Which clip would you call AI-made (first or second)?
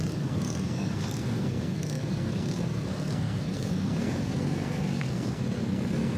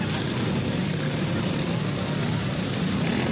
first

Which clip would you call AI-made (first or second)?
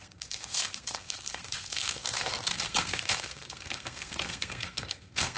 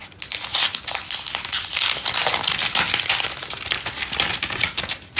first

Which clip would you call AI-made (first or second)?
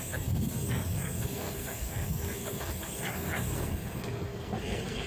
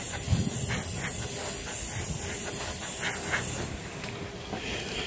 first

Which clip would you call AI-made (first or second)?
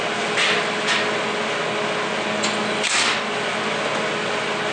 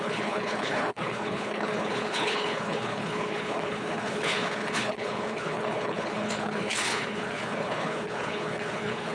second